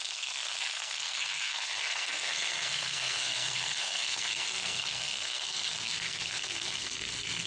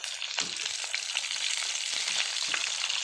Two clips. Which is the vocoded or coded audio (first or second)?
first